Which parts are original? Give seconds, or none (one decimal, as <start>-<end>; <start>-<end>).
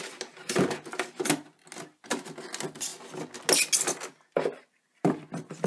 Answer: 0.0-5.7